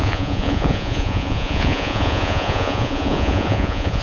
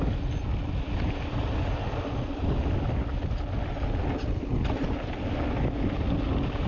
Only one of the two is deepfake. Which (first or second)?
first